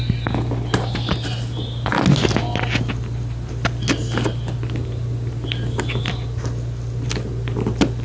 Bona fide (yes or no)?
yes